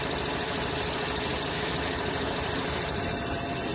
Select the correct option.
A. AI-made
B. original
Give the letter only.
A